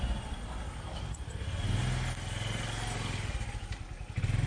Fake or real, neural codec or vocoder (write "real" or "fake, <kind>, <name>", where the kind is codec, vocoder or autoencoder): real